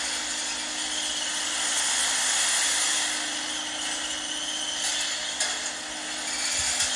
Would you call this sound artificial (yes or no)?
no